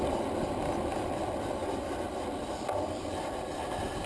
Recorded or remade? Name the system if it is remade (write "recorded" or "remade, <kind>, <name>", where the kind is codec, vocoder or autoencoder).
recorded